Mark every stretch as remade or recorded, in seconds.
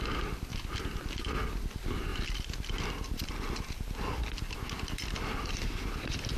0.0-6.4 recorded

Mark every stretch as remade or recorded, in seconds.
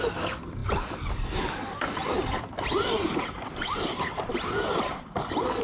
0.0-5.6 remade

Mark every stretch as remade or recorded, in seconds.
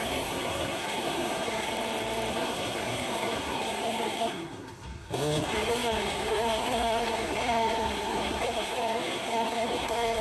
0.0-1.7 remade; 1.7-2.3 recorded; 2.3-10.2 remade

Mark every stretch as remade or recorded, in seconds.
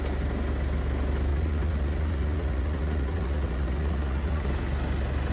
0.0-1.3 recorded; 1.3-4.5 remade; 4.5-5.3 recorded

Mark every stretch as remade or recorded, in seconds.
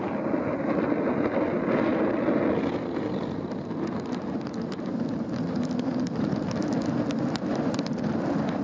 0.0-8.6 recorded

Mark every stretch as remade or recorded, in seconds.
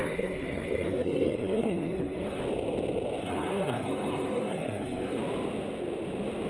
0.0-2.4 remade; 2.4-3.2 recorded; 3.2-5.2 remade; 5.2-6.5 recorded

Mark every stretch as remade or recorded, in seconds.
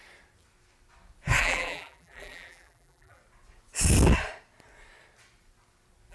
0.0-1.4 recorded; 1.4-3.2 remade; 3.2-6.1 recorded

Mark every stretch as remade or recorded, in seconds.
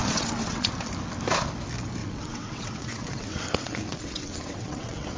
0.0-0.7 remade; 0.7-2.0 recorded; 2.0-5.2 remade